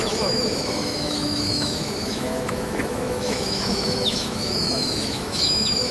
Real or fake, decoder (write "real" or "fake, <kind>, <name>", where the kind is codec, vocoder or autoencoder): fake, autoencoder, DAC-VAE